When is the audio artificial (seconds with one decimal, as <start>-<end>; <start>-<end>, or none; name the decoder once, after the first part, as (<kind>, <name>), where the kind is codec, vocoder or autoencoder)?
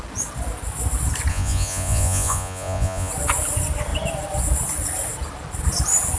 1.3-3.1 (vocoder, Vocos)